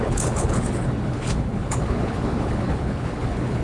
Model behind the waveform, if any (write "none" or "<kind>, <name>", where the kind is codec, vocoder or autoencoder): codec, HILCodec